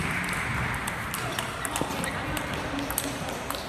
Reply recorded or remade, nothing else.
recorded